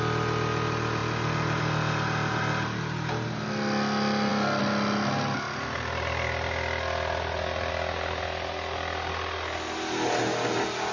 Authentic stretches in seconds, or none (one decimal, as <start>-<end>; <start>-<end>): 0.0-10.9